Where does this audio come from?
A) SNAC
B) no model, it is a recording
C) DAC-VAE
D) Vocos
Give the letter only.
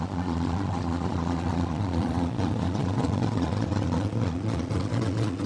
D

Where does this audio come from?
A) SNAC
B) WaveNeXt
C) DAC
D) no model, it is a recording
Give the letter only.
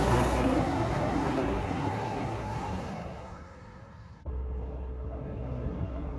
A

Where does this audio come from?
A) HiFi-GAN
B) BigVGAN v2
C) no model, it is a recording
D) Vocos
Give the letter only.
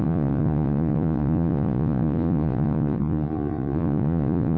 D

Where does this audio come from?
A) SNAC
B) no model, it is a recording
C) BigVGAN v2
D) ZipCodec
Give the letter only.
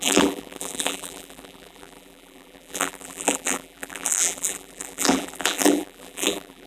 C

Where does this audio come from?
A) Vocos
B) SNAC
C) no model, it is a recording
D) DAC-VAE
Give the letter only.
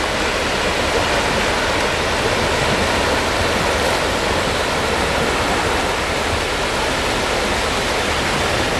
C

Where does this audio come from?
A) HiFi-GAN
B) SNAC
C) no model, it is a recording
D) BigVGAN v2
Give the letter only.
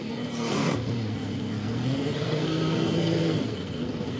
B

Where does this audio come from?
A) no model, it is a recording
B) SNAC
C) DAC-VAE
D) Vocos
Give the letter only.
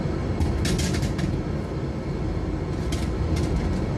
A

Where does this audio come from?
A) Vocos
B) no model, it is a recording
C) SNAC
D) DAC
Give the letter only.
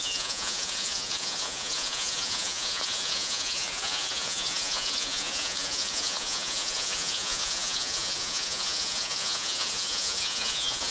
A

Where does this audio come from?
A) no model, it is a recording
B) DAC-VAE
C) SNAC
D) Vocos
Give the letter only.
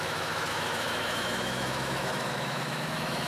B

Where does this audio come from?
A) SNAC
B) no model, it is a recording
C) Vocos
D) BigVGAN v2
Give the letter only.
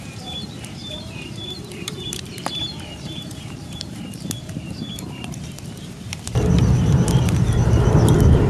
D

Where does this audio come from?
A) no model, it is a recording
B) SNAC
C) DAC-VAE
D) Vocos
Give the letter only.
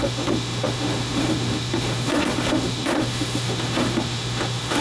C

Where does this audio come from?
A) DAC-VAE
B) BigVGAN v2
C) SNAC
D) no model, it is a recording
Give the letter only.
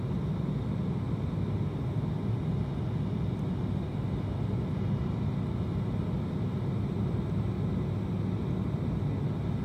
D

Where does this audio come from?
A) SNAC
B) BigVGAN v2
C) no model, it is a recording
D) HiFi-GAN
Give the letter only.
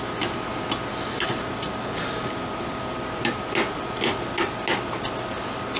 C